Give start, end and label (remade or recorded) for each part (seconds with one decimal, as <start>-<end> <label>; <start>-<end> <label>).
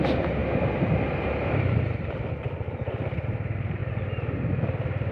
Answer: 0.0-5.1 recorded